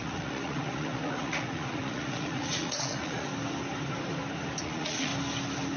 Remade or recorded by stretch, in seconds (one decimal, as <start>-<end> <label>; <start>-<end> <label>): 0.0-3.3 remade; 3.3-4.6 recorded; 4.6-5.1 remade; 5.1-5.8 recorded